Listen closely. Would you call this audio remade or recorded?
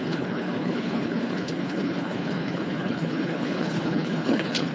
remade